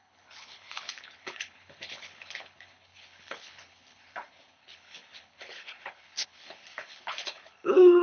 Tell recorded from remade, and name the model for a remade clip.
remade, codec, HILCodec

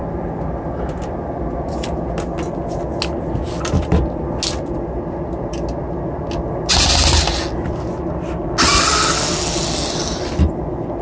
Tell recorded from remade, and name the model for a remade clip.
recorded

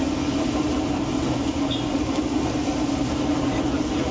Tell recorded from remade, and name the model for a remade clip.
recorded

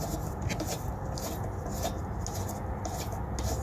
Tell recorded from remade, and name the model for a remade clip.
recorded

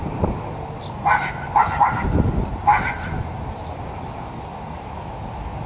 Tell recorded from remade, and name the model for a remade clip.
recorded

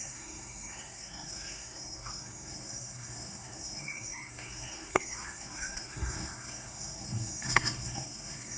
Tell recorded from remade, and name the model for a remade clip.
remade, codec, SNAC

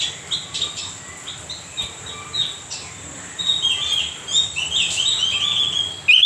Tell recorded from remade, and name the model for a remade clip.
recorded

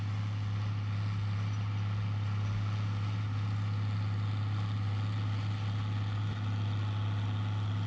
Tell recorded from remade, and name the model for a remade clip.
recorded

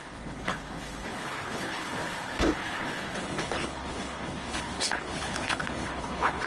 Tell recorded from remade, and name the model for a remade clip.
remade, codec, HILCodec